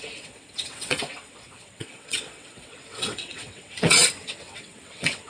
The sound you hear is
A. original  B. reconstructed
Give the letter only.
B